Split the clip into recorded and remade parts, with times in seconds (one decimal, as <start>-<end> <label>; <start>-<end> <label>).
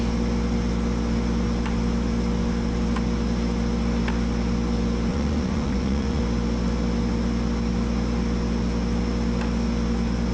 0.0-5.1 recorded; 5.1-6.2 remade; 6.2-10.3 recorded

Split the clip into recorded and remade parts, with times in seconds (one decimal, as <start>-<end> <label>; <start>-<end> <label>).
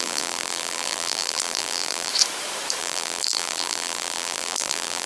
0.0-2.1 remade; 2.1-2.8 recorded; 2.8-5.1 remade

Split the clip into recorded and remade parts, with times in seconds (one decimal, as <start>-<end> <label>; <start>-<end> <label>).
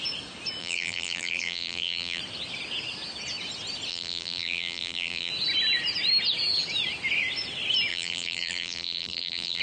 0.0-0.6 recorded; 0.6-2.2 remade; 2.2-3.9 recorded; 3.9-5.3 remade; 5.3-7.9 recorded; 7.9-9.6 remade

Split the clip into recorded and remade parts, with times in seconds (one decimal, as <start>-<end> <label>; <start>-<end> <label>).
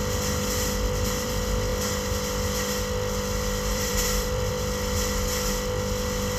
0.0-3.7 recorded; 3.7-4.5 remade; 4.5-6.4 recorded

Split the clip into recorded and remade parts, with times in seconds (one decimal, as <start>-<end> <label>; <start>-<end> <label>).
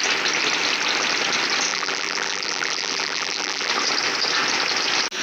0.0-1.7 recorded; 1.7-3.7 remade; 3.7-5.2 recorded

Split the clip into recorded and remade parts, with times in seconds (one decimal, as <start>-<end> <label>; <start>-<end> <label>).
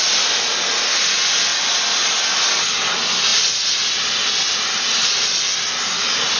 0.0-6.4 recorded